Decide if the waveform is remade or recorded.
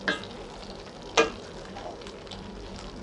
recorded